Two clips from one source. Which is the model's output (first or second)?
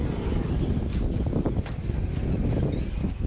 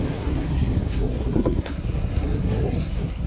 second